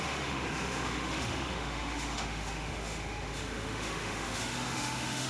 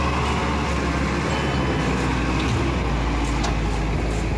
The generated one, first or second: first